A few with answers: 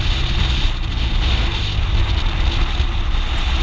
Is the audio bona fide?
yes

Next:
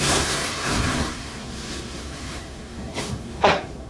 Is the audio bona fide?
no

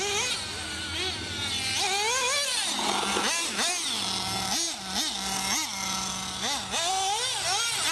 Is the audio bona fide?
yes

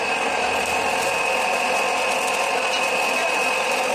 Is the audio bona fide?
yes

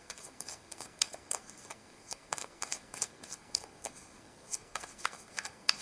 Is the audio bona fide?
no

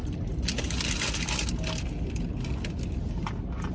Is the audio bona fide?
yes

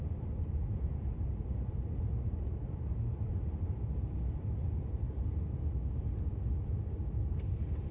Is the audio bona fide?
yes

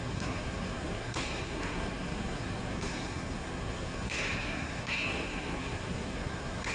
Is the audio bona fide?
no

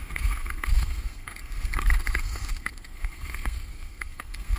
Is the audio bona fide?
no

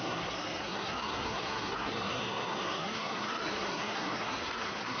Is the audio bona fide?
no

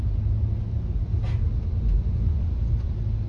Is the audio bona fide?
yes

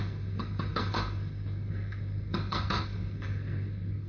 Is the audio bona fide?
no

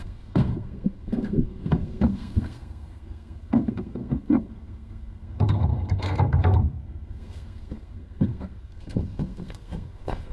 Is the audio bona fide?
no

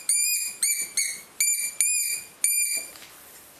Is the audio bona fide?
yes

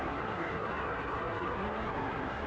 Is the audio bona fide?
no